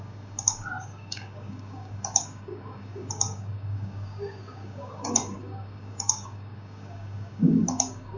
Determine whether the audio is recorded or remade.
remade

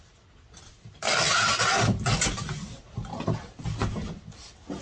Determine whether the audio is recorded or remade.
recorded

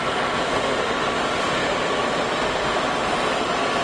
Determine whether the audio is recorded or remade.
recorded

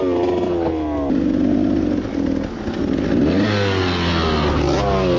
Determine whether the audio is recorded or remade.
recorded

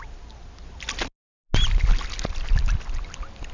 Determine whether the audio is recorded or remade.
recorded